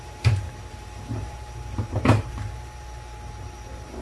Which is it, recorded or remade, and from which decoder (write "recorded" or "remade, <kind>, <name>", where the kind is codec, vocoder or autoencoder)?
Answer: remade, vocoder, BigVGAN v2